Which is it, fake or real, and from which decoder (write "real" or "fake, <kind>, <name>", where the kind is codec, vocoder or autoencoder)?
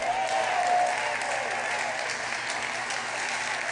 real